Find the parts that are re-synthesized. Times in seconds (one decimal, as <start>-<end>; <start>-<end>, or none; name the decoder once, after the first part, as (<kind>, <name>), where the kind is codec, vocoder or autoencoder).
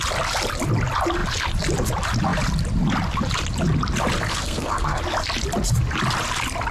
4.3-5.0 (codec, SNAC)